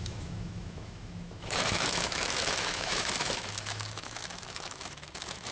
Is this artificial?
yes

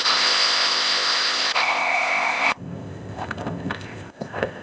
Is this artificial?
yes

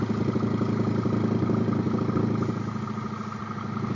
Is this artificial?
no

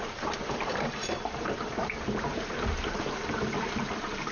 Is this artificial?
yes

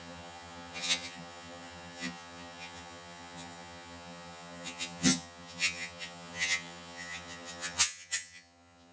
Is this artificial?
yes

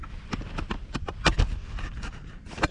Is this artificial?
no